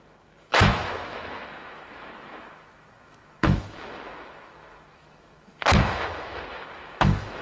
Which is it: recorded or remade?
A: remade